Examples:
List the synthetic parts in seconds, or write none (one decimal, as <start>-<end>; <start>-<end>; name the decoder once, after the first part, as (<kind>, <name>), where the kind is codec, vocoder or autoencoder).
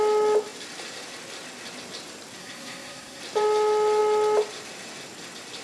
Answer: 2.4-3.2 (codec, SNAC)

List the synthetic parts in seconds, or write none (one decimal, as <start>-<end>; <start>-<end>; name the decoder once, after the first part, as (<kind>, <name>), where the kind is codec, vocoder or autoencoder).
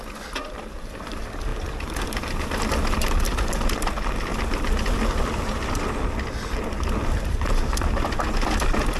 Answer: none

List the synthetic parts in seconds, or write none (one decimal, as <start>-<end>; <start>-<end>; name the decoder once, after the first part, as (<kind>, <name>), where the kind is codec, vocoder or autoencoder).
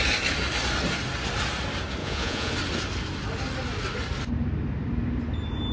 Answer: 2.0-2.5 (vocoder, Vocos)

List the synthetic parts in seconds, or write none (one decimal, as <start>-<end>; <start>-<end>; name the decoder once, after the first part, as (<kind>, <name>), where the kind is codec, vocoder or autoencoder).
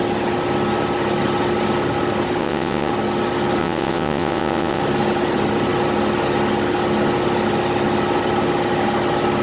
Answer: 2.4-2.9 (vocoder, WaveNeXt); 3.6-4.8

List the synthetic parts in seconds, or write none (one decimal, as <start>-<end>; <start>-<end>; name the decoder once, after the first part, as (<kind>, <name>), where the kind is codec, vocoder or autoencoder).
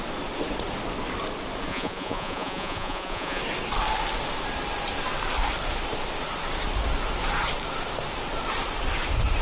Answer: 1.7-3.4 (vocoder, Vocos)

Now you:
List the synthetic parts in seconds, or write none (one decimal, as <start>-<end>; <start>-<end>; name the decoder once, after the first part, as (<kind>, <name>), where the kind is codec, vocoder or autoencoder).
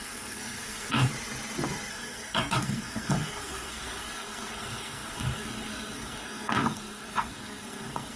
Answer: 0.0-1.1 (codec, SNAC); 1.9-8.2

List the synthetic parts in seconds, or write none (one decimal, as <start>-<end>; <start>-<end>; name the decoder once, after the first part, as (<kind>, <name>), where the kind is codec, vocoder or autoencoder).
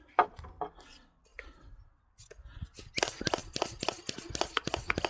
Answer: none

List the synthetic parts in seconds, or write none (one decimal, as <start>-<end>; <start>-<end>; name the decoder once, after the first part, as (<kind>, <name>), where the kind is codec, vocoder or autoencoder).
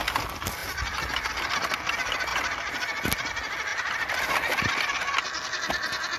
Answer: 3.7-4.7 (vocoder, BigVGAN v2)